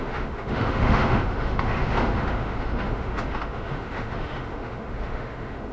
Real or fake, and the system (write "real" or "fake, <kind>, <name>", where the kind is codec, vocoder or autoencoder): fake, autoencoder, DAC-VAE